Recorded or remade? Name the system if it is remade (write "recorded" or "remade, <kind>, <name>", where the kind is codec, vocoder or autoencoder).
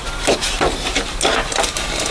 recorded